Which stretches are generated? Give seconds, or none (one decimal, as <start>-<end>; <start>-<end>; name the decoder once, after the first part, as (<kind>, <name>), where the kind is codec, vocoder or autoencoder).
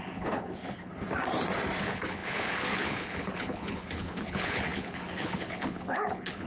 0.0-0.9 (codec, HILCodec); 1.8-6.5